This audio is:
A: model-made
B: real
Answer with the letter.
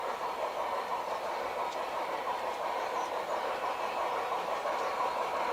A